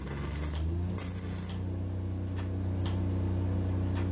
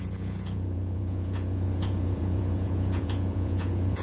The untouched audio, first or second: first